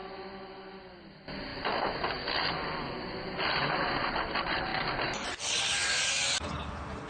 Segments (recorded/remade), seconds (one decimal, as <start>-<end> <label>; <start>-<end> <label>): 0.0-7.1 recorded